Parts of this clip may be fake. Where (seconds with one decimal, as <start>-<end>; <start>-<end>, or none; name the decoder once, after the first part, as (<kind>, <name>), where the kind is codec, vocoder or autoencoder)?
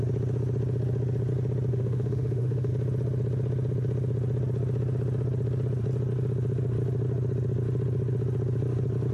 1.7-2.7 (autoencoder, DAC-VAE)